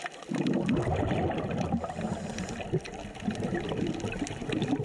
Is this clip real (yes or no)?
yes